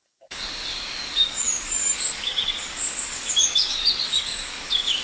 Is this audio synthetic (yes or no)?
yes